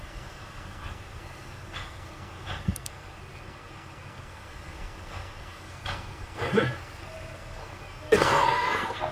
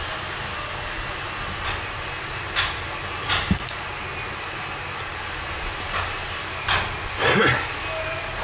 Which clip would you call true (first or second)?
second